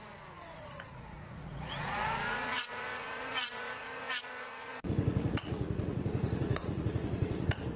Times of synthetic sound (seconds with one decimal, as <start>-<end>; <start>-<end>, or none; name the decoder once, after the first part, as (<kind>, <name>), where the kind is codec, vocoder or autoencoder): 0.0-7.8 (vocoder, Vocos)